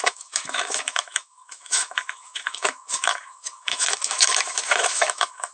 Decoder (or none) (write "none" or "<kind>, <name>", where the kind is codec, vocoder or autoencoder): autoencoder, DAC-VAE